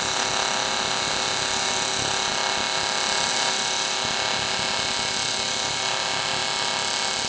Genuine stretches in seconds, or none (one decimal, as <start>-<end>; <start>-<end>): 0.0-7.3